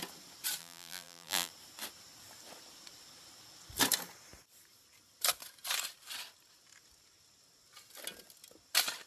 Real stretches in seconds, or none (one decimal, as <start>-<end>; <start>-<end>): 0.0-0.6; 1.5-9.1